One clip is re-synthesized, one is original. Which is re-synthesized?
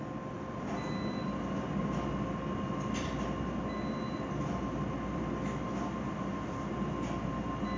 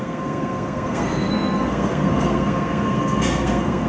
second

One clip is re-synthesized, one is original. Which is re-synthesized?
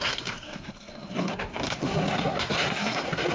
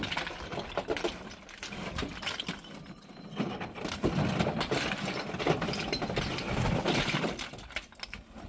first